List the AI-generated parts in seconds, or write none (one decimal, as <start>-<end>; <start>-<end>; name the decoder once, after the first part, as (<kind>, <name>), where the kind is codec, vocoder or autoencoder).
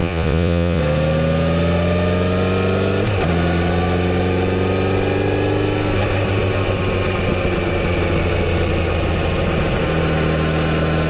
0.0-0.8 (vocoder, Vocos)